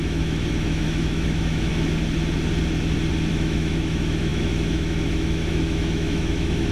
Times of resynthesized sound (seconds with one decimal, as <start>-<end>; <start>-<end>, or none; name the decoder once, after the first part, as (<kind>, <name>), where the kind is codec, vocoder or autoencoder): 0.0-1.7 (autoencoder, DAC-VAE); 3.3-6.7